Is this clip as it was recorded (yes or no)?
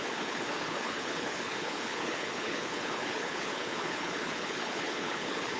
no